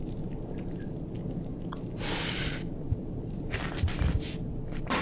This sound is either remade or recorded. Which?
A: recorded